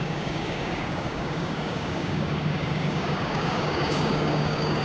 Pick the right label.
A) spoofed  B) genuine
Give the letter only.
A